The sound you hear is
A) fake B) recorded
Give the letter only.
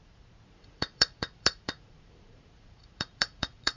A